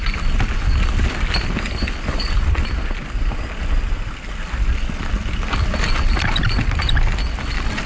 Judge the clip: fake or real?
real